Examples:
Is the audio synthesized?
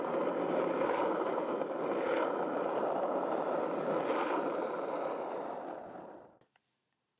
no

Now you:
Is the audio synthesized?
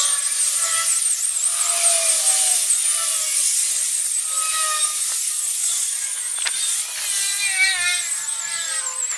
no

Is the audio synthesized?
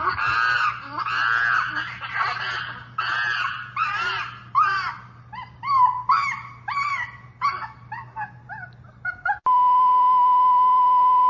no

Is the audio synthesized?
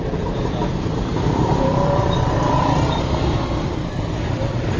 yes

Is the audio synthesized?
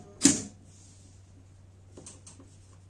no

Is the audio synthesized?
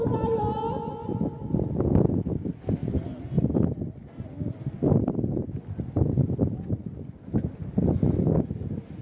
no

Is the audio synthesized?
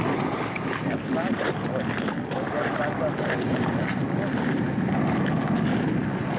no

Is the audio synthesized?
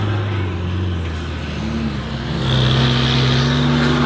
no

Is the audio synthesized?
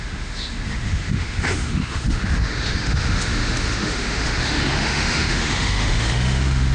yes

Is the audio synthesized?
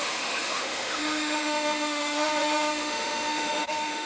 yes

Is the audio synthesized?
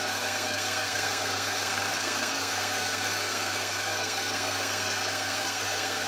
yes